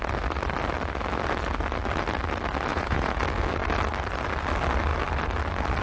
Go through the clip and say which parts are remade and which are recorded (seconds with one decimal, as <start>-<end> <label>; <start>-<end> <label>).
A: 0.0-2.7 recorded; 2.7-3.2 remade; 3.2-5.8 recorded